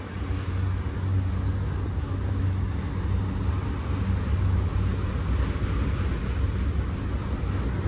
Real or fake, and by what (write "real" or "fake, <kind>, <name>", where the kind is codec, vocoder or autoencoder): real